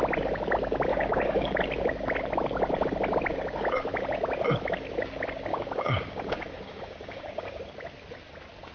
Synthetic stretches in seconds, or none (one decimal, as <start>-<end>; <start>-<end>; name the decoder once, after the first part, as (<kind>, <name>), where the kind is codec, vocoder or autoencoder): 0.9-1.6 (codec, DAC); 5.5-7.6